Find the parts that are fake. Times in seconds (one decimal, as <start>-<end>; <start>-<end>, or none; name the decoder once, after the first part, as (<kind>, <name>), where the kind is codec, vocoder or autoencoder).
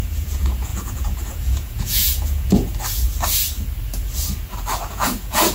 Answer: 0.0-2.7 (vocoder, Vocos); 4.9-5.5